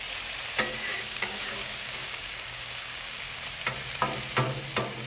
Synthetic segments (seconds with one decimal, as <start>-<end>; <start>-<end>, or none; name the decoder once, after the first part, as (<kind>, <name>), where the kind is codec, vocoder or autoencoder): 0.9-3.4 (codec, DAC)